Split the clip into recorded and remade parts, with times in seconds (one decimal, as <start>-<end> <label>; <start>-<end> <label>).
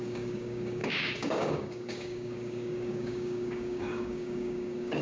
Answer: 0.0-5.0 remade